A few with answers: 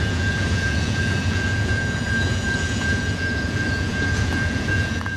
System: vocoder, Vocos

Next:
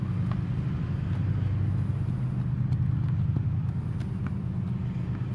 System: none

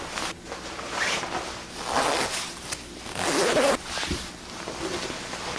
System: none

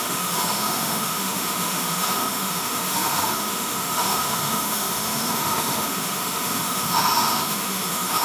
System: autoencoder, DAC-VAE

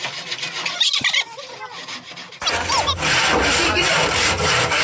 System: none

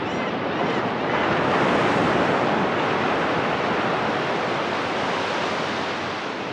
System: none